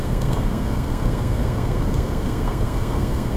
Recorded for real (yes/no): no